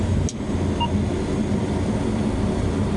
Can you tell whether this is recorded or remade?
recorded